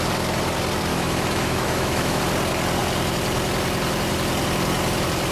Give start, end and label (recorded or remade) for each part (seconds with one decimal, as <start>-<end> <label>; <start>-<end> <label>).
0.0-0.9 recorded; 0.9-2.2 remade; 2.2-5.3 recorded